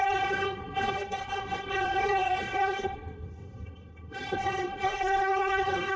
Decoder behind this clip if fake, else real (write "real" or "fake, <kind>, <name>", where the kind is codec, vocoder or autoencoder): fake, codec, SNAC